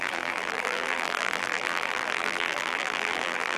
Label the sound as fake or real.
fake